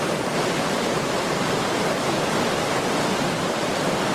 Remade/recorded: recorded